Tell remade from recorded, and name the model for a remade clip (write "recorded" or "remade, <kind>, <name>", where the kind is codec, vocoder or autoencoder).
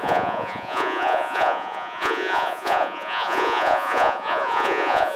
remade, vocoder, Vocos